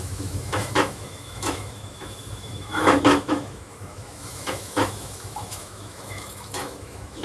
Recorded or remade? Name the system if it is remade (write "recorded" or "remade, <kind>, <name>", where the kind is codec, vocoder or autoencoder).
remade, autoencoder, DAC-VAE